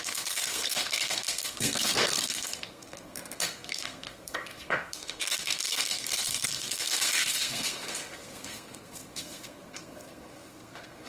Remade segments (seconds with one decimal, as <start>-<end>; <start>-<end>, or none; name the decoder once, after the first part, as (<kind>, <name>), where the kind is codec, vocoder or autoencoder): 0.0-11.1 (codec, SNAC)